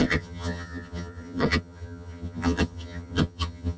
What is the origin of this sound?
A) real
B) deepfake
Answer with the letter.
B